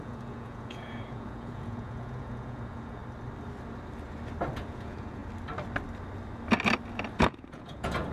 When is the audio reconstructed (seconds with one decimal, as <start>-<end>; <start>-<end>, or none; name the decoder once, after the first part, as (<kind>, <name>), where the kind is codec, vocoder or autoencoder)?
0.0-3.0 (vocoder, Vocos); 4.5-5.2; 7.2-8.1

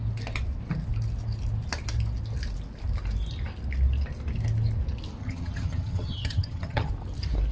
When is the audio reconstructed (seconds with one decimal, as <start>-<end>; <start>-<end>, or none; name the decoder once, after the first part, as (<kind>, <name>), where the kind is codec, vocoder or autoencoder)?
5.2-6.9 (vocoder, HiFi-GAN)

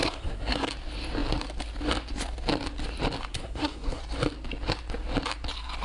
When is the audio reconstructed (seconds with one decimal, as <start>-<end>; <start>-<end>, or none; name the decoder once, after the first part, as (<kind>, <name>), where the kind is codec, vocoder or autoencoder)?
0.0-0.7 (codec, SNAC); 3.3-4.0